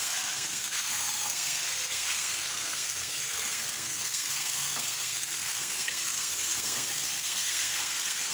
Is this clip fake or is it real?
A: fake